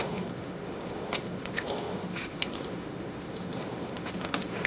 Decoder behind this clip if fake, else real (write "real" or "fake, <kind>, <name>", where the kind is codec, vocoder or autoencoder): fake, autoencoder, DAC-VAE